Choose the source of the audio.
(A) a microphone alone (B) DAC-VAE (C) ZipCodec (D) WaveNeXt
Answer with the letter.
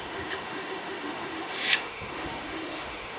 B